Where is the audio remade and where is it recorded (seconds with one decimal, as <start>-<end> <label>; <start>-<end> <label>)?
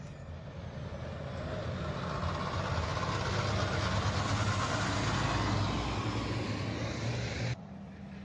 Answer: 0.0-8.2 recorded